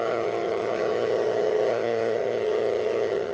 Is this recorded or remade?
remade